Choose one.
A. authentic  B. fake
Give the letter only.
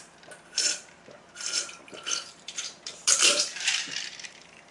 B